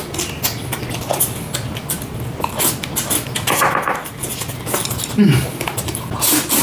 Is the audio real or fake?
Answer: real